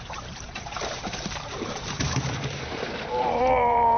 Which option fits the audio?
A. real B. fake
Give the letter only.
B